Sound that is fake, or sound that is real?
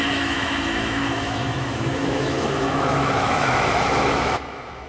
fake